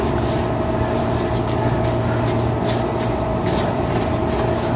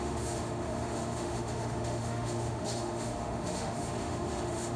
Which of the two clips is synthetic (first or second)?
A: second